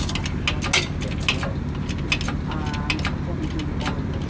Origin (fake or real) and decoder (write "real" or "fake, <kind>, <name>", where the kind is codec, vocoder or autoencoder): real